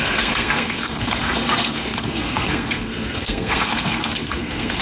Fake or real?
fake